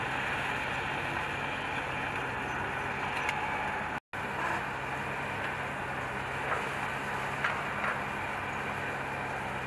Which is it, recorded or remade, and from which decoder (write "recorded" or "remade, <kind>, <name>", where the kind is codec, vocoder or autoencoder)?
recorded